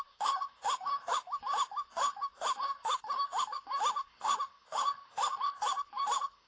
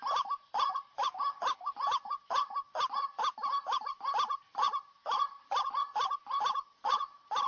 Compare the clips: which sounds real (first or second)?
second